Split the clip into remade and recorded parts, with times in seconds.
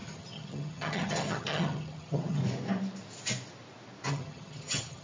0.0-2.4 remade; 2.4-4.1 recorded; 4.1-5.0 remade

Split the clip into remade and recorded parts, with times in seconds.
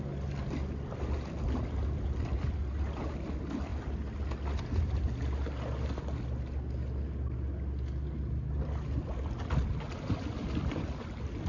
0.0-11.5 recorded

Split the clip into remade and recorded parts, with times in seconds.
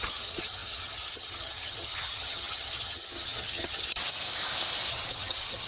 0.0-4.0 remade; 4.0-4.9 recorded; 4.9-5.7 remade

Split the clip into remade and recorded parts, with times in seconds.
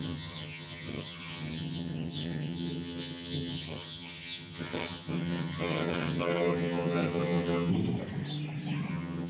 0.0-7.7 remade; 7.7-8.9 recorded; 8.9-9.3 remade